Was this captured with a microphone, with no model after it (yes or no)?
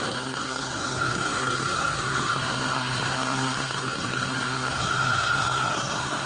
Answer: no